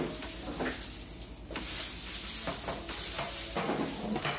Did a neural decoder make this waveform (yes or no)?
no